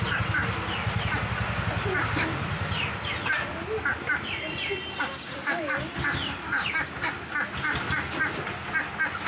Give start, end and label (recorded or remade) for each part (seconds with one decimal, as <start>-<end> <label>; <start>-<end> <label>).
0.0-9.3 recorded